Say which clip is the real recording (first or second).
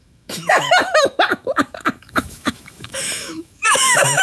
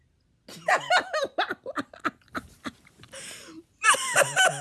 second